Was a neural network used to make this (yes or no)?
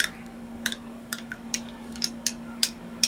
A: yes